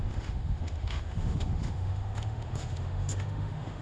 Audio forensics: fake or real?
fake